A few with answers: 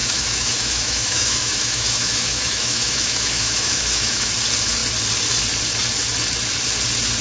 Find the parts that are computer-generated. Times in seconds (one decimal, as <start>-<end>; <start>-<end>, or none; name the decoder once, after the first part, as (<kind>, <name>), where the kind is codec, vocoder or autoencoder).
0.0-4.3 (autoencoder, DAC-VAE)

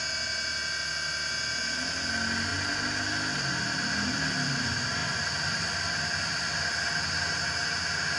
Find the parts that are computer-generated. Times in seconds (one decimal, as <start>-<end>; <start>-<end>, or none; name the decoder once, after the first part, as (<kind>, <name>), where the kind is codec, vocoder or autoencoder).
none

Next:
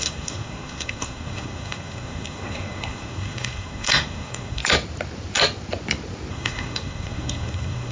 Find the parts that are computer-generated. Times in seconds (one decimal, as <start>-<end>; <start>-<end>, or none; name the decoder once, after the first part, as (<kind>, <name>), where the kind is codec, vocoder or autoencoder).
0.0-4.6 (codec, SNAC); 6.3-7.9